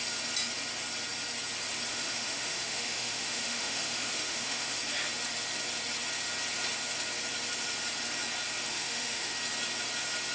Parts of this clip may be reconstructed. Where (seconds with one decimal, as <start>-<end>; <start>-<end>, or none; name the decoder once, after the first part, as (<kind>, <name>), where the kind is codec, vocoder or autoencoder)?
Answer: 1.9-4.8 (autoencoder, DAC-VAE); 8.7-9.3